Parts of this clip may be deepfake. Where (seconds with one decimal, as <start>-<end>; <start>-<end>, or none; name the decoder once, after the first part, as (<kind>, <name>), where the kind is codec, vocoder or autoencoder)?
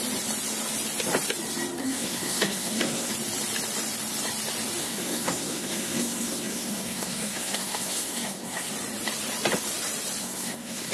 1.8-3.1 (codec, SNAC); 4.8-8.7; 10.2-10.9